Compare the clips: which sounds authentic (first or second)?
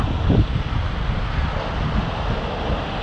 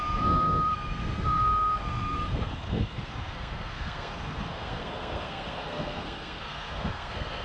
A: first